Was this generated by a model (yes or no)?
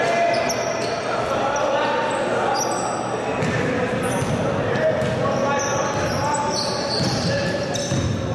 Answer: no